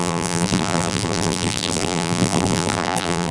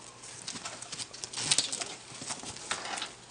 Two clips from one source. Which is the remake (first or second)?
first